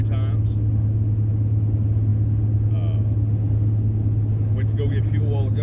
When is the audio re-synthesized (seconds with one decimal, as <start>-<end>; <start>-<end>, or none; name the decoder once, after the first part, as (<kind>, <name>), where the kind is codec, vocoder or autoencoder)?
none